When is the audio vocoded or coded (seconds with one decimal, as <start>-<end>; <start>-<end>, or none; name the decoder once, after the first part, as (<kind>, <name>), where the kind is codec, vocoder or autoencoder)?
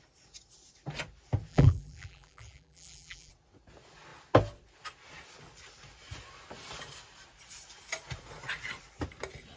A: 1.5-3.3 (vocoder, BigVGAN v2)